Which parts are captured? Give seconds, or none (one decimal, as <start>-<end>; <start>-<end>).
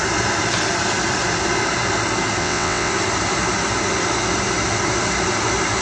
0.0-2.4; 2.9-5.8